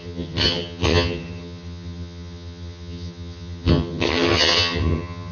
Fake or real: fake